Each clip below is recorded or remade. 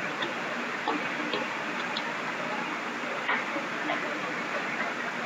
recorded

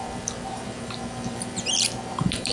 remade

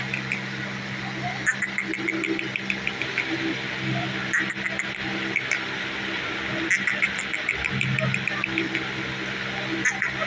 recorded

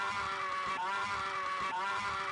remade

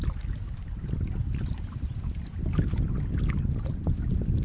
recorded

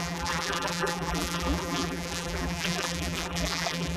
remade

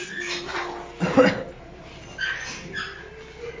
recorded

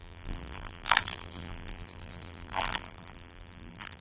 remade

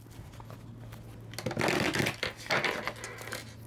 recorded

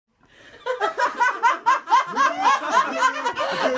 recorded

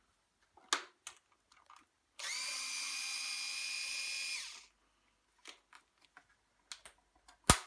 recorded